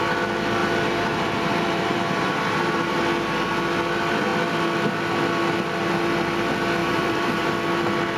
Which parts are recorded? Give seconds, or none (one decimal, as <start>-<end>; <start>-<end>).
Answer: 0.0-0.6; 3.0-6.8; 7.5-8.2